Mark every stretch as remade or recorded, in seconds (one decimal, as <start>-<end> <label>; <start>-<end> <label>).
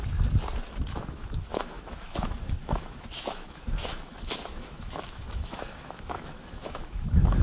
0.0-0.9 recorded; 0.9-7.4 remade